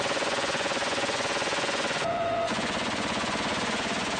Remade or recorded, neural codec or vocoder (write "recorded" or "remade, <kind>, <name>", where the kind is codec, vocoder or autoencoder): remade, vocoder, Vocos